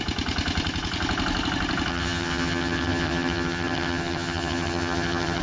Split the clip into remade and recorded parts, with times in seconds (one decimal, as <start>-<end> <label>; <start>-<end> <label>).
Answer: 0.0-1.9 recorded; 1.9-5.4 remade